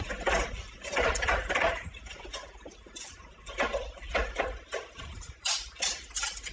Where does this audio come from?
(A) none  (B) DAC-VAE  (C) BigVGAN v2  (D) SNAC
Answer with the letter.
C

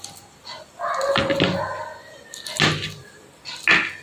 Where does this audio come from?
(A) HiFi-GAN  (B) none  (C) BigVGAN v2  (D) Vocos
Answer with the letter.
B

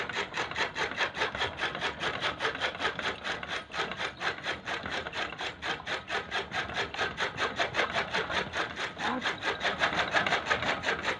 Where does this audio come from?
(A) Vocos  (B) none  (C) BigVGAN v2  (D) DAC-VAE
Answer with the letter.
C